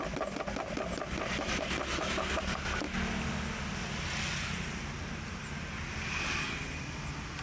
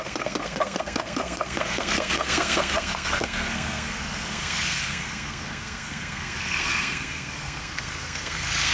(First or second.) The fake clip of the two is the second